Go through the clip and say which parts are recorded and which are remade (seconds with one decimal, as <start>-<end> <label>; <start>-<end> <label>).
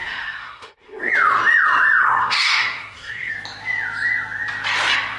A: 0.0-1.1 remade; 1.1-2.0 recorded; 2.0-3.3 remade; 3.3-5.2 recorded